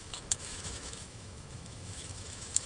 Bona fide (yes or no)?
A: no